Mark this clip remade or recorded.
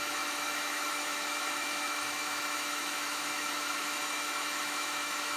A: remade